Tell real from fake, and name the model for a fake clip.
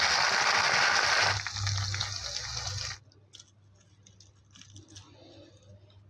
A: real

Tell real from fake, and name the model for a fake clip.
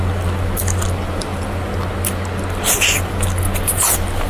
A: real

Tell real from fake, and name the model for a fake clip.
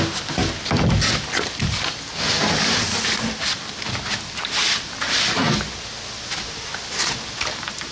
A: real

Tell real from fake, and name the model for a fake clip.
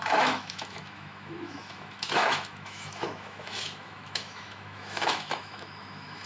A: fake, autoencoder, DAC-VAE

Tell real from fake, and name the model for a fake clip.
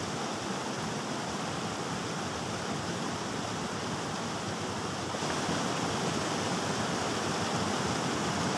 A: real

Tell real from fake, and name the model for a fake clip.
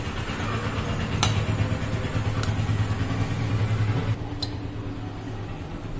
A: real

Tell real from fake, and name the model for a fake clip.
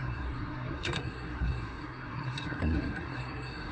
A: fake, codec, SNAC